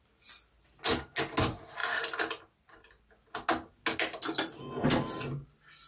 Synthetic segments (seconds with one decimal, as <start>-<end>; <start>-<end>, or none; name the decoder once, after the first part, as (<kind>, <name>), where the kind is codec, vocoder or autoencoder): none